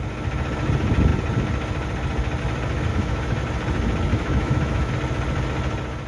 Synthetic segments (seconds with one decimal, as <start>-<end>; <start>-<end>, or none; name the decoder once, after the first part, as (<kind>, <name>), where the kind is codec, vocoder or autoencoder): 2.9-3.4 (autoencoder, DAC-VAE); 4.1-4.9